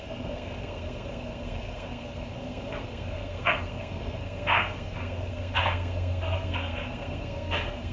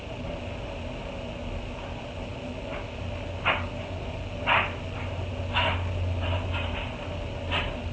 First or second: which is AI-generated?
first